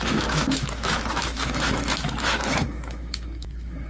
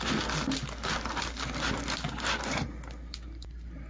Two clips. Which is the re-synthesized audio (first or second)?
first